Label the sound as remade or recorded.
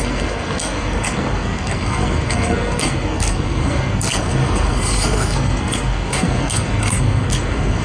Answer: remade